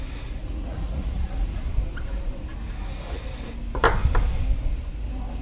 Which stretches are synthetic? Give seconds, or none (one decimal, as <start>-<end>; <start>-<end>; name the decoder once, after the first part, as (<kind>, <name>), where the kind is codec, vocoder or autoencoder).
0.4-1.6 (vocoder, Vocos)